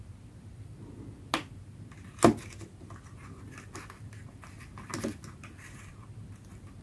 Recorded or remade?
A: recorded